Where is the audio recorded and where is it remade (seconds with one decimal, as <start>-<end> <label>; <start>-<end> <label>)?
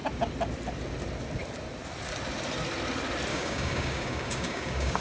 0.0-3.3 recorded; 3.3-5.0 remade